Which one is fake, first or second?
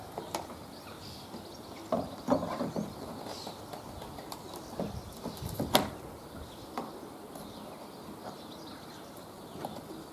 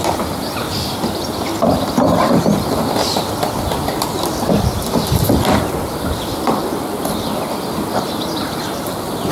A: second